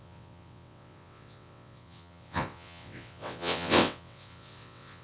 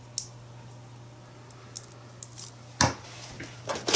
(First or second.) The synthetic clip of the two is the first